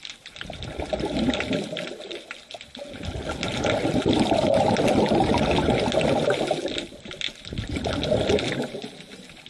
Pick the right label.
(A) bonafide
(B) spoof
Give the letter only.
A